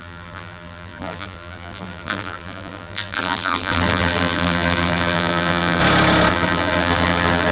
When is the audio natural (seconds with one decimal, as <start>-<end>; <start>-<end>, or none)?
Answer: 5.8-6.3